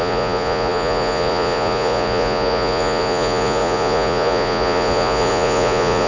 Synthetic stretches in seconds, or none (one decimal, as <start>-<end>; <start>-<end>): 0.0-6.1